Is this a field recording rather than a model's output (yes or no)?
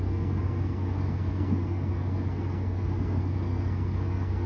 no